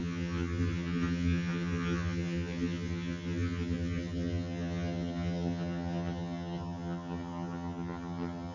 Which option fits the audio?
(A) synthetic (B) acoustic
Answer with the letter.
A